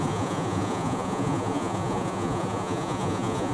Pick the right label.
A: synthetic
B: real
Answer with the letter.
A